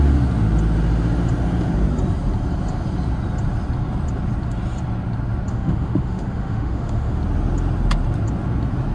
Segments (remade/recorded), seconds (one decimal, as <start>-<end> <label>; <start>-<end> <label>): 0.0-5.5 recorded; 5.5-7.2 remade; 7.2-8.9 recorded